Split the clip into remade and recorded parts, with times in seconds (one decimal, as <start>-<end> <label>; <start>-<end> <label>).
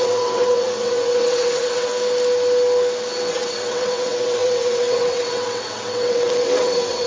0.0-1.9 remade; 1.9-3.3 recorded; 3.3-7.1 remade